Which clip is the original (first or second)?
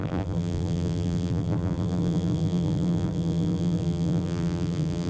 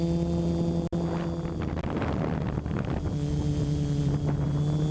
second